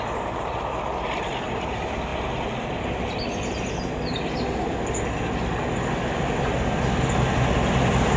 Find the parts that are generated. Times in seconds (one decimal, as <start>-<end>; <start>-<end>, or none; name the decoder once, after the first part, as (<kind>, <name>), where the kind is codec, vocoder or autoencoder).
none